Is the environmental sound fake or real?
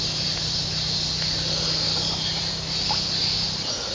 real